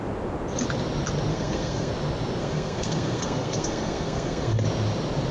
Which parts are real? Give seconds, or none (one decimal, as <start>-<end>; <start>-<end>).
0.0-1.3; 1.9-2.4; 4.6-5.3